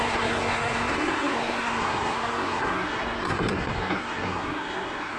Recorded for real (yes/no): no